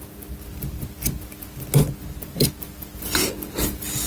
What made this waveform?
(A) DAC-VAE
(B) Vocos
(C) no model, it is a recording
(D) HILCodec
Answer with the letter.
C